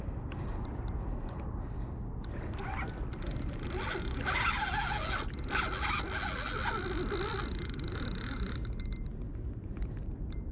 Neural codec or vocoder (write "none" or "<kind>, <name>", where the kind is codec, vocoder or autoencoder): none